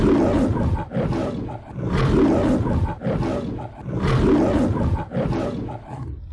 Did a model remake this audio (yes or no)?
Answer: yes